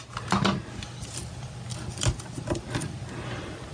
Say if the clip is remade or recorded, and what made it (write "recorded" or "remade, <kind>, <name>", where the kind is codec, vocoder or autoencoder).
recorded